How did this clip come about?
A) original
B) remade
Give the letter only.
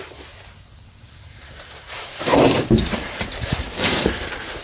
B